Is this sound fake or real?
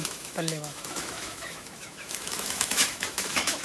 fake